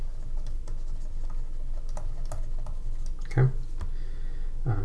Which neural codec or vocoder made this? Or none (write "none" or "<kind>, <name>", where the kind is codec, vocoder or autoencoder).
none